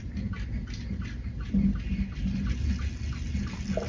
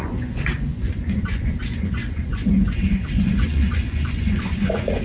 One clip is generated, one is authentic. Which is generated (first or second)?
second